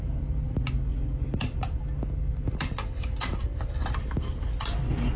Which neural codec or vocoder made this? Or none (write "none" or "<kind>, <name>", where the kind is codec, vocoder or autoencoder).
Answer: none